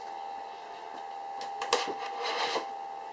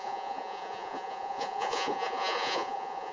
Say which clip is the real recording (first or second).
first